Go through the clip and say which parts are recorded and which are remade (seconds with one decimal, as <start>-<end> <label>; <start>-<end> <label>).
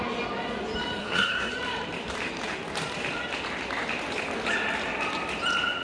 0.0-1.0 recorded; 1.0-1.5 remade; 1.5-5.8 recorded